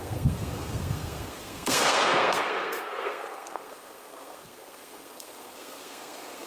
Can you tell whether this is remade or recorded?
remade